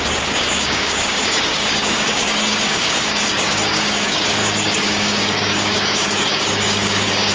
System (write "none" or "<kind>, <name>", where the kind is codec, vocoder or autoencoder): codec, DAC